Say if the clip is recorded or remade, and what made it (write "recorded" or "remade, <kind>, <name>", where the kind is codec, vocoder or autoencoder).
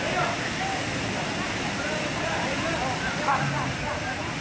recorded